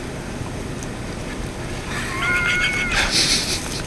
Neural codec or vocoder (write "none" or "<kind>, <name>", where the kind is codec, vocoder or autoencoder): none